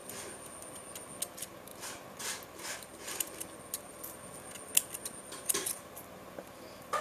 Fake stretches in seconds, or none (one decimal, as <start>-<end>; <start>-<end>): none

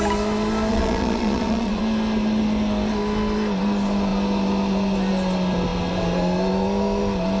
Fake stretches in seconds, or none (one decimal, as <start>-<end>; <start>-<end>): 0.7-1.8

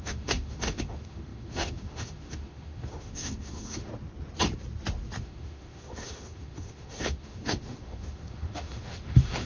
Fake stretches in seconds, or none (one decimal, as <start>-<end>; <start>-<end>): 0.0-3.9; 5.2-9.5